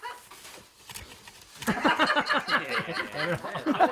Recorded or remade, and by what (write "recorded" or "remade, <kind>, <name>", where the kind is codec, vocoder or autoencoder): recorded